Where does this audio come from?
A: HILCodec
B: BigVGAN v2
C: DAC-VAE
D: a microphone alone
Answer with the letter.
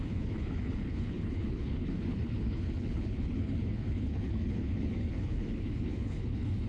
A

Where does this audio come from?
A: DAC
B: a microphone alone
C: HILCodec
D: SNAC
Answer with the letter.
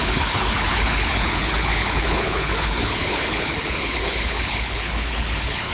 C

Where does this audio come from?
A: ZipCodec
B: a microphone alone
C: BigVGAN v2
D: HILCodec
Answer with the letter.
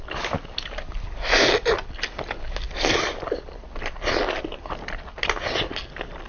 B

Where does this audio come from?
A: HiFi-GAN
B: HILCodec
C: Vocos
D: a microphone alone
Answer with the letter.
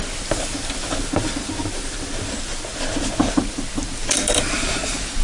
D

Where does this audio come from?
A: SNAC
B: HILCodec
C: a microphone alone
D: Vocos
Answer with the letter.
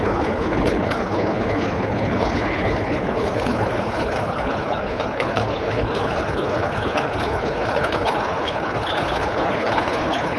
B